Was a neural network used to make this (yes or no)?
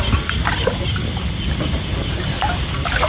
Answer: no